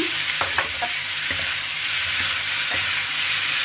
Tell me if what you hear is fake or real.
fake